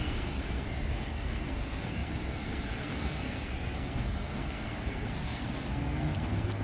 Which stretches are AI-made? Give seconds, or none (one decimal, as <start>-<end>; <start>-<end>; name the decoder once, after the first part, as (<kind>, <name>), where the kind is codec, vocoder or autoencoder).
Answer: 0.0-6.6 (codec, SNAC)